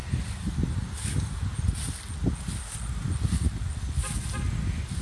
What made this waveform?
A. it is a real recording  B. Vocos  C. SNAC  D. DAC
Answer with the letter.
A